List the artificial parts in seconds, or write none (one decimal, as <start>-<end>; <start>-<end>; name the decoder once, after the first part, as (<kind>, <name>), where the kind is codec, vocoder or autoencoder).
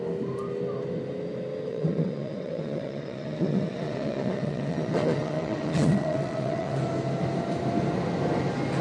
1.7-6.8 (vocoder, WaveNeXt)